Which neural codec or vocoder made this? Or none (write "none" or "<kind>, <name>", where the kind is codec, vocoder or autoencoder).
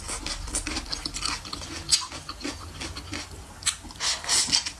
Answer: none